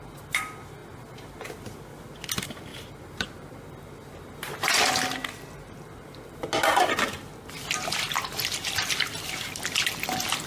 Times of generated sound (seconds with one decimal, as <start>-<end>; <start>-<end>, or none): none